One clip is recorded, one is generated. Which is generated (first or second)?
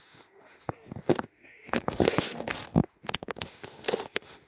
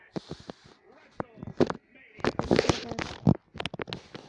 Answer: first